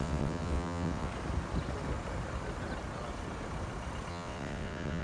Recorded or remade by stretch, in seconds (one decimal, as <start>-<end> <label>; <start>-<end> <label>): 0.0-1.1 remade; 1.1-4.1 recorded; 4.1-5.0 remade